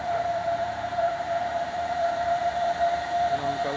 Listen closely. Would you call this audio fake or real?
fake